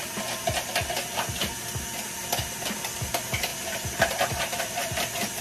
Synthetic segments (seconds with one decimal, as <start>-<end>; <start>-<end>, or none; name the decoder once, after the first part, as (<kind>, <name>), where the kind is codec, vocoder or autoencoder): none